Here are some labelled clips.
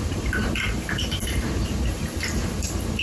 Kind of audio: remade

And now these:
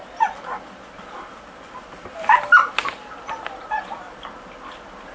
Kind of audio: remade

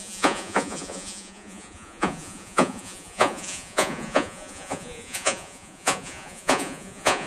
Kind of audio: remade